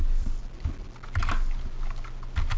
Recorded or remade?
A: recorded